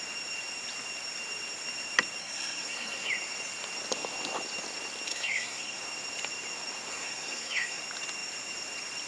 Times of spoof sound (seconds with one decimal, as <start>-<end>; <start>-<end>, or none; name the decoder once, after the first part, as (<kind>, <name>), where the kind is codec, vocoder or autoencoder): 2.2-3.1 (codec, SNAC); 5.1-5.8; 6.9-7.8